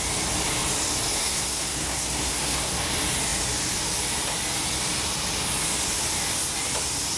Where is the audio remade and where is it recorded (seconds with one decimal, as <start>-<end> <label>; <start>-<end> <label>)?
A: 0.0-1.2 recorded; 1.2-2.7 remade; 2.7-7.2 recorded